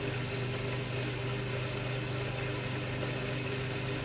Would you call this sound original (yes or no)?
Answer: yes